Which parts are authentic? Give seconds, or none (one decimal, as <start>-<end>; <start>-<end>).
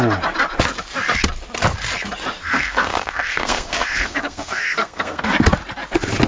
0.0-2.4; 5.3-6.3